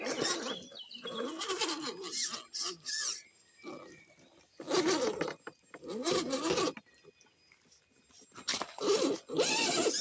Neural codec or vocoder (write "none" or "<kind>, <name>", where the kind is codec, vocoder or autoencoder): none